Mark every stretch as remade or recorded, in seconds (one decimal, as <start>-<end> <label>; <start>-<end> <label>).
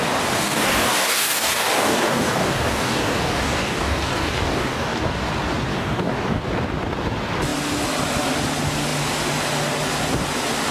0.0-0.4 recorded; 0.4-5.3 remade; 5.3-5.7 recorded; 5.7-6.4 remade; 6.4-10.7 recorded